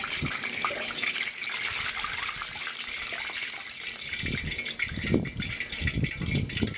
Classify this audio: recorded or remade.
recorded